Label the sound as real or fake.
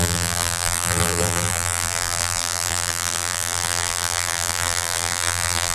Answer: fake